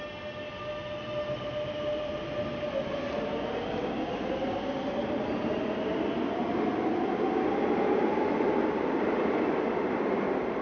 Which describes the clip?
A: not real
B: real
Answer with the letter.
B